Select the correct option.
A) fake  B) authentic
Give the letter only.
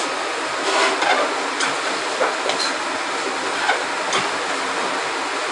B